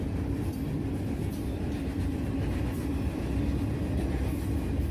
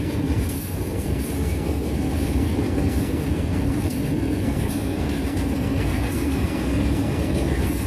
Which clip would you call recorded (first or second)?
first